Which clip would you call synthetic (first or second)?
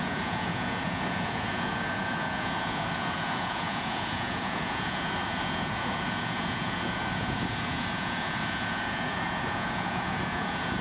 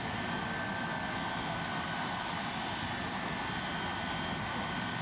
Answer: first